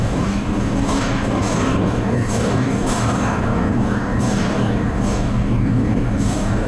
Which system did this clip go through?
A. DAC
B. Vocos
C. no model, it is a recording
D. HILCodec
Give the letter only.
A